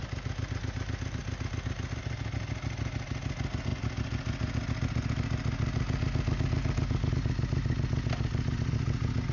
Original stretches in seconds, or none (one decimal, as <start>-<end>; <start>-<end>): 0.0-9.3